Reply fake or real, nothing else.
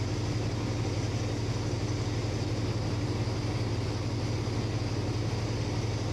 real